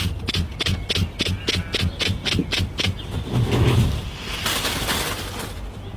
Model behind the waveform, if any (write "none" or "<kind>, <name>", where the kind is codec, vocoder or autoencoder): none